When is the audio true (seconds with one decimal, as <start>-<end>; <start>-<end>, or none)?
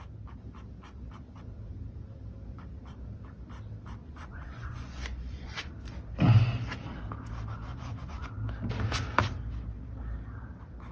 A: 0.0-4.0; 5.7-7.7; 8.3-10.9